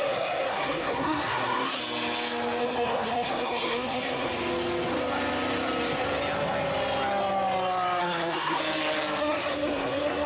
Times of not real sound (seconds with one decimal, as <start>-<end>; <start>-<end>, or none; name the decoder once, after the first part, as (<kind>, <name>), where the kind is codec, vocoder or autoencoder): 0.0-1.8 (codec, SNAC); 2.6-4.3; 8.0-8.6; 9.2-10.3